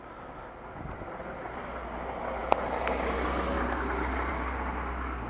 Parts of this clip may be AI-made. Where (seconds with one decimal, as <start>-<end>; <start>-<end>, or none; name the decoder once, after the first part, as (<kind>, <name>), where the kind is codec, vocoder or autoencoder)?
none